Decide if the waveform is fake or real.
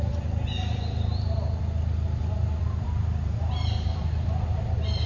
fake